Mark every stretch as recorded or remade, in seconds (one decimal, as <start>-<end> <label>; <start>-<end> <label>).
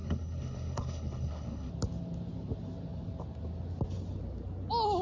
0.0-1.7 remade; 1.7-5.0 recorded